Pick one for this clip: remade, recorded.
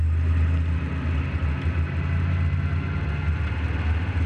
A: recorded